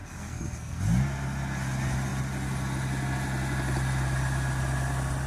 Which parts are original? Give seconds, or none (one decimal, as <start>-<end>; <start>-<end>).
0.8-5.3